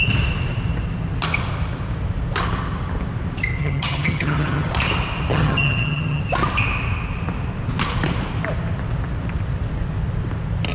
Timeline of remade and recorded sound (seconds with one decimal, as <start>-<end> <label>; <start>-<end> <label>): 0.0-3.6 recorded; 3.6-4.7 remade; 4.7-5.3 recorded; 5.3-6.2 remade; 6.2-10.7 recorded